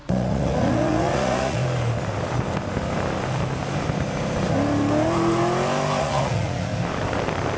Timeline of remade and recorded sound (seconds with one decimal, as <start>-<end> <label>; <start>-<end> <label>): 0.0-1.6 remade; 1.6-6.0 recorded; 6.0-6.7 remade; 6.7-7.6 recorded

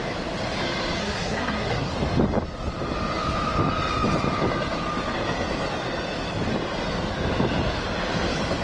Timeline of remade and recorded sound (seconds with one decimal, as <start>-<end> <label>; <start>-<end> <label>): 0.0-1.0 recorded; 1.0-1.9 remade; 1.9-8.6 recorded

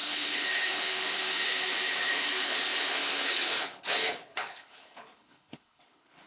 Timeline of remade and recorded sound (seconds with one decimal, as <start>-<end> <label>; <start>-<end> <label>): 0.0-6.3 remade